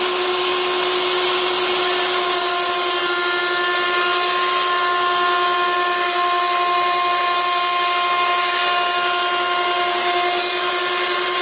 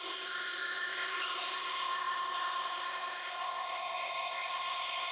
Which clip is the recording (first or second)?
first